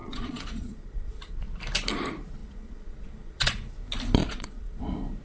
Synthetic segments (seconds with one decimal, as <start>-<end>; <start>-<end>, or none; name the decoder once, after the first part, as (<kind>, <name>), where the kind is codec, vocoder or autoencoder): 0.0-1.3 (vocoder, Vocos); 2.4-3.7; 4.2-4.8